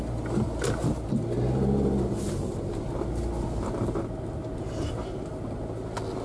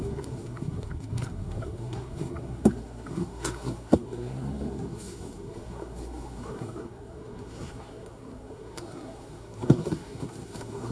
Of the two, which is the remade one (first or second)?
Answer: second